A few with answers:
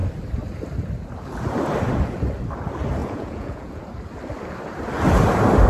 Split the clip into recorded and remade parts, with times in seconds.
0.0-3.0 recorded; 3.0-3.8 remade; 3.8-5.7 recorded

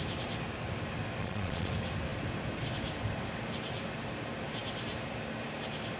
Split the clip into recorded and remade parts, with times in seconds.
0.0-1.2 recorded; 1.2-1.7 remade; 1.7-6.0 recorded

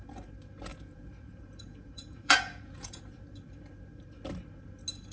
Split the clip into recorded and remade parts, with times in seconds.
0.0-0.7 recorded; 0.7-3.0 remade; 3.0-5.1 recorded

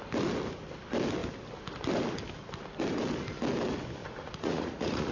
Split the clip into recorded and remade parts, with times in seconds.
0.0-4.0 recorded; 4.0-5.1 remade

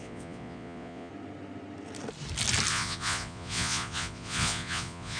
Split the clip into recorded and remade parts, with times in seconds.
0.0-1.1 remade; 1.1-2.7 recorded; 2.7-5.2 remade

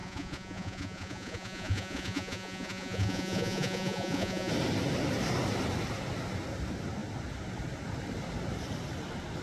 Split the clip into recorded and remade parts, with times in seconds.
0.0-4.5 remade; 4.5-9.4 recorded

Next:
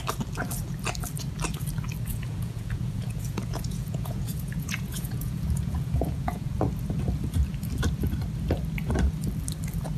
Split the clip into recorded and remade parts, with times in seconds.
0.0-2.1 recorded; 2.1-6.6 remade; 6.6-10.0 recorded